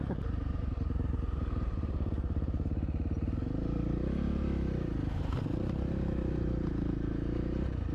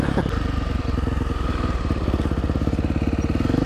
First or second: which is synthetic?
first